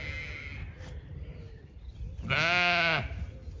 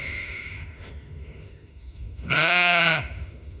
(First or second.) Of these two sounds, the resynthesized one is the second